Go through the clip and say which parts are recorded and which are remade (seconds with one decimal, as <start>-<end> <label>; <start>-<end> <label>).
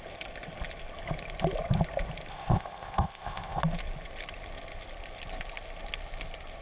0.0-2.3 recorded; 2.3-3.6 remade; 3.6-6.6 recorded